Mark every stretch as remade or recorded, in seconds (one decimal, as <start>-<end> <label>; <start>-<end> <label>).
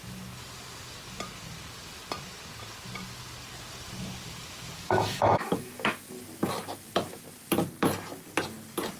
0.0-4.8 recorded; 4.8-6.0 remade; 6.0-9.0 recorded